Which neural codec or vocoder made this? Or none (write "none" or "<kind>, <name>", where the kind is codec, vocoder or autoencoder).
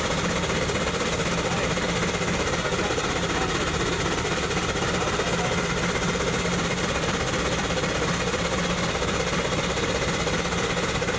none